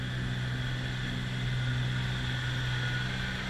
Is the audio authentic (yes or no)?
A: yes